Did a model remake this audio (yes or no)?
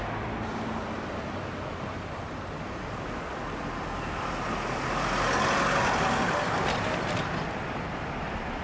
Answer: no